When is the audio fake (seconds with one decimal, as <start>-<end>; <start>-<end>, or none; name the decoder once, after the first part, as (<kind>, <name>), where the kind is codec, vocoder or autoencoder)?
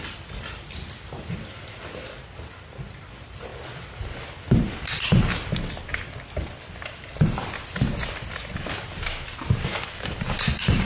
0.0-3.5 (vocoder, BigVGAN v2); 5.8-10.8